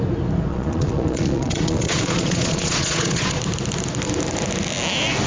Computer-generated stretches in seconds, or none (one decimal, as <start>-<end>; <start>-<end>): 0.5-3.4